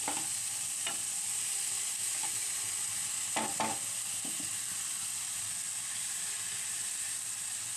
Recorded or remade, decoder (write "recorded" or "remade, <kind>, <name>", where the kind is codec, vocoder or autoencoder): recorded